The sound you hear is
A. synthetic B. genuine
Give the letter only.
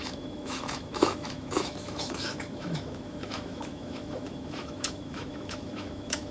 A